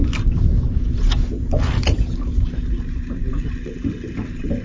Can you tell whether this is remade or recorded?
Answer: recorded